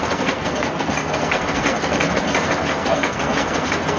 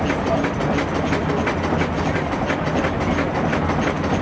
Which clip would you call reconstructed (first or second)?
first